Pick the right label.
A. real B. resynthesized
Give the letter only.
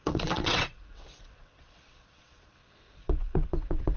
B